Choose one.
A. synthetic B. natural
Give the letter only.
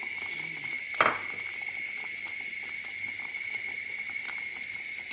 B